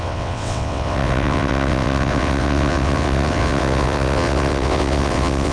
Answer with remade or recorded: remade